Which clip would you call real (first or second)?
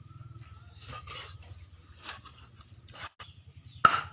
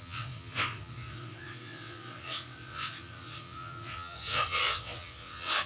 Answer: first